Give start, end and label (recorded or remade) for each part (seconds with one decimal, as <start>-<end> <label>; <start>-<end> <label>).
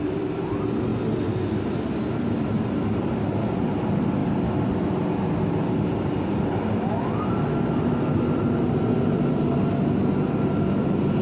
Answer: 0.0-11.2 recorded